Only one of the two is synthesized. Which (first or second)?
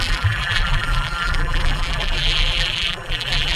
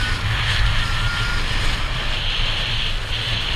first